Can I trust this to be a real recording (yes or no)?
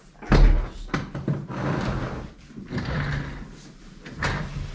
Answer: yes